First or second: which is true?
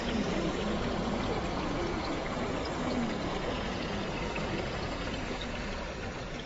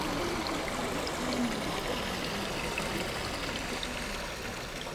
second